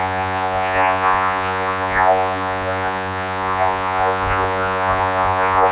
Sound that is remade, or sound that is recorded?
remade